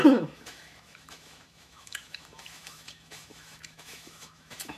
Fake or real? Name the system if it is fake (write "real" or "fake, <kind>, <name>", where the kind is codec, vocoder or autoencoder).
fake, autoencoder, DAC-VAE